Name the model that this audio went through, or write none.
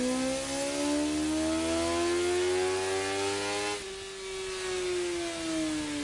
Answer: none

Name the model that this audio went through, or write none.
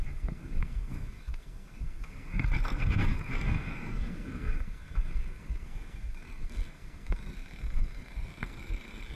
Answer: codec, SNAC